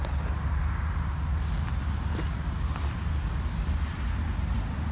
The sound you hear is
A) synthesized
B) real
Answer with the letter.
B